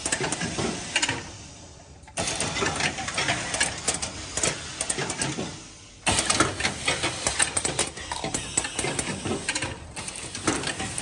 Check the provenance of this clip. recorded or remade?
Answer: recorded